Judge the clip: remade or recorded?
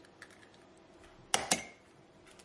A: recorded